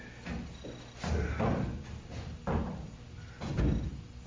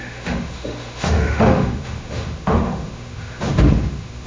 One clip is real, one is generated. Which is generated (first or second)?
second